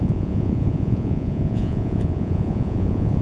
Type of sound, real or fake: fake